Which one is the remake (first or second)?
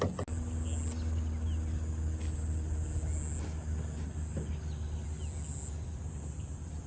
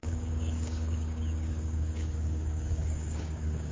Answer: second